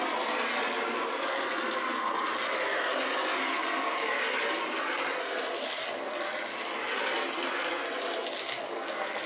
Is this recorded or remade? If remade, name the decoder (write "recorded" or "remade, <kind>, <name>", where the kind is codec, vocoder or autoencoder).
recorded